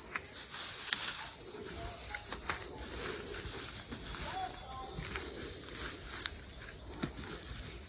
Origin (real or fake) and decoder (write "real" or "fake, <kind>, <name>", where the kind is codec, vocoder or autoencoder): real